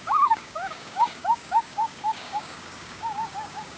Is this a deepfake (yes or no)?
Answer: yes